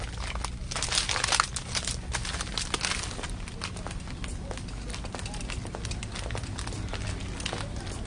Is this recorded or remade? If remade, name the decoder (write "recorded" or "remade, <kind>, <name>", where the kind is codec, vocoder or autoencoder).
recorded